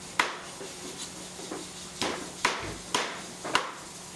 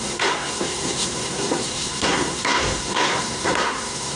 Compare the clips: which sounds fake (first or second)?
second